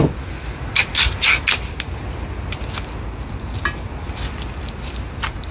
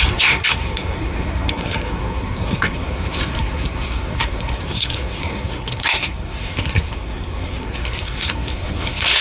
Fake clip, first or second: second